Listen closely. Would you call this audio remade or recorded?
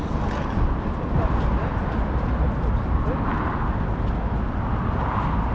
recorded